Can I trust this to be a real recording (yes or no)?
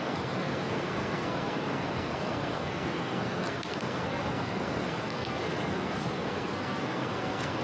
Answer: no